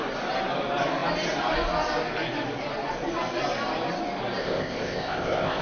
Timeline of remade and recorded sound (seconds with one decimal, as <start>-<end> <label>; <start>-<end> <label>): 0.0-4.4 recorded; 4.4-5.6 remade